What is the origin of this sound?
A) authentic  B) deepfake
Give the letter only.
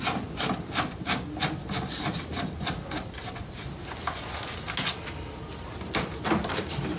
A